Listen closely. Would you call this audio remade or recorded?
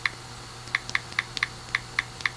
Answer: recorded